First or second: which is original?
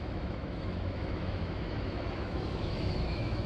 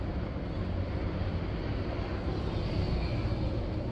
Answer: second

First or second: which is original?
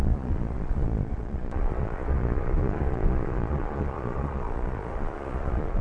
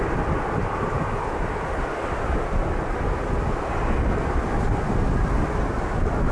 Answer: second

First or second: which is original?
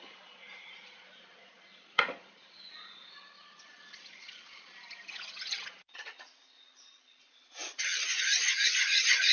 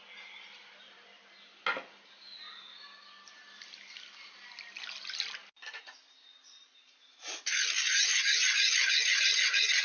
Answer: second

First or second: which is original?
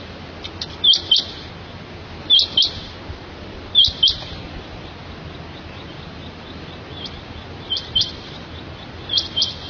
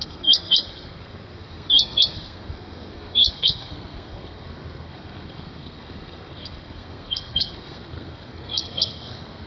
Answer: first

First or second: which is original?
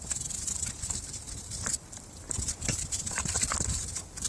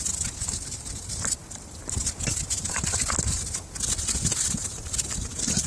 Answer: second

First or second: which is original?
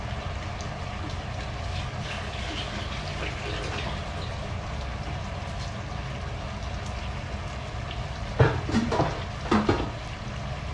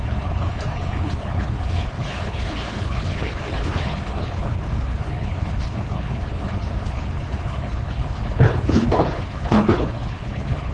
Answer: first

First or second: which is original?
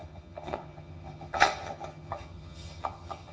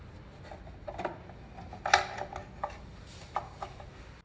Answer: second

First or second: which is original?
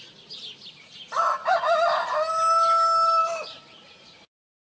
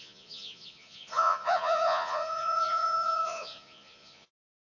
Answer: first